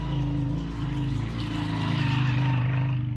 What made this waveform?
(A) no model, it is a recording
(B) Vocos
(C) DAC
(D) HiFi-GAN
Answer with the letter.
A